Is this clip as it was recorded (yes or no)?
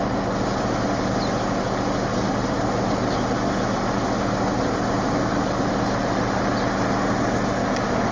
yes